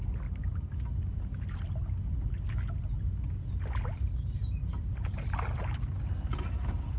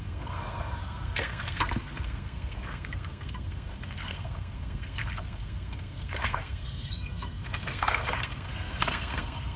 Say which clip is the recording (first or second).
first